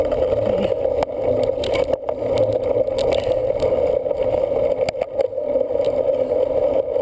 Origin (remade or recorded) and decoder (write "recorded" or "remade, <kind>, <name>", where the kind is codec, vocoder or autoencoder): recorded